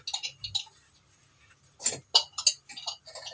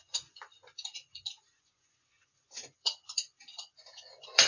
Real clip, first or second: first